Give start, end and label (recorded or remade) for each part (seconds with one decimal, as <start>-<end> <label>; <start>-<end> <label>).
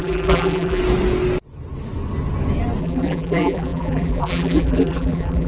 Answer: 0.0-0.8 remade; 0.8-2.8 recorded; 2.8-5.5 remade